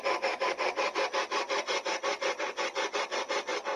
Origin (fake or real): real